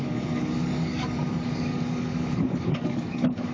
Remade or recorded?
remade